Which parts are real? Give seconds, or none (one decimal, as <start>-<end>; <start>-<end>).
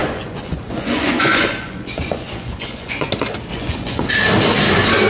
3.1-3.5; 4.1-5.1